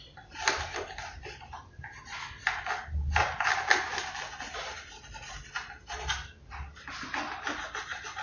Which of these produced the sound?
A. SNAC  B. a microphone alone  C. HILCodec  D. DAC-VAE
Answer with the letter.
B